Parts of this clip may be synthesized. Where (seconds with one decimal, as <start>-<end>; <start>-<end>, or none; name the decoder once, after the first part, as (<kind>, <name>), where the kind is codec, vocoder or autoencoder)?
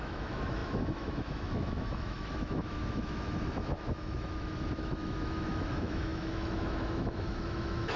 0.0-8.0 (autoencoder, DAC-VAE)